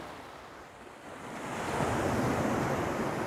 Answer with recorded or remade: recorded